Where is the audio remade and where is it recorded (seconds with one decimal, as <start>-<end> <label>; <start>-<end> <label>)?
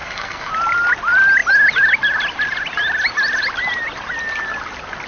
0.0-0.5 remade; 0.5-5.1 recorded